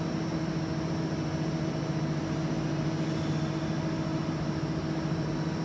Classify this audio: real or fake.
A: real